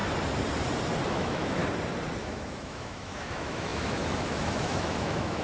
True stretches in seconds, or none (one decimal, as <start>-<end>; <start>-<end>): 0.0-1.1; 1.6-2.2